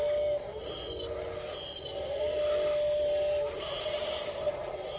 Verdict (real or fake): real